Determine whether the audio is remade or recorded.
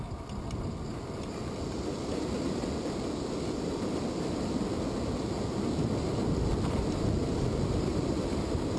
recorded